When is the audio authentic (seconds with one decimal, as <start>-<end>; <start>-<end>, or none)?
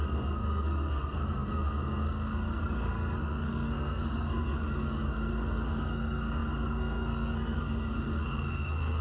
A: none